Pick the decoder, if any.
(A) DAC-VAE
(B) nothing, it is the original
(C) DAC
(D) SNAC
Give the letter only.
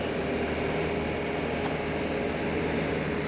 B